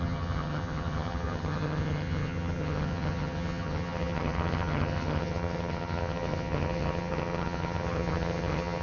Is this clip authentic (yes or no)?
no